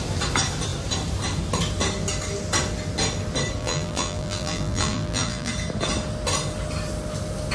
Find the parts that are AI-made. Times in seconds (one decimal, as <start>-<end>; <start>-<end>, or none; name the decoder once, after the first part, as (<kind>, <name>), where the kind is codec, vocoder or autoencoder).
3.6-5.5 (vocoder, BigVGAN v2)